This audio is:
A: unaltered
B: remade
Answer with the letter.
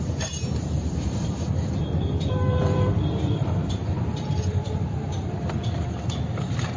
B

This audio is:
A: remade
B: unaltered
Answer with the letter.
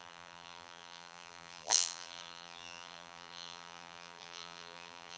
A